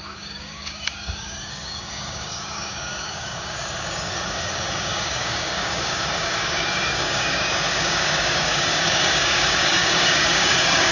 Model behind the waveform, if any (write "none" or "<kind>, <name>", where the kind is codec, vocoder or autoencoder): codec, DAC